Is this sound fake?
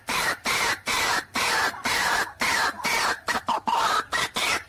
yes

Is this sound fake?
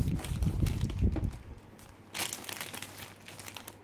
no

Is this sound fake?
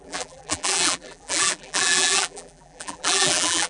yes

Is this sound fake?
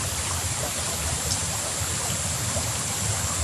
yes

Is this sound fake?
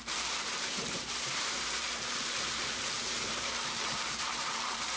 yes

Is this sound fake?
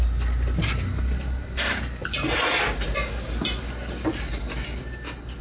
no